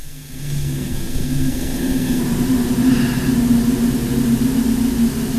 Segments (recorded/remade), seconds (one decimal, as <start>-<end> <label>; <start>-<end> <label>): 0.0-2.2 remade; 2.2-5.4 recorded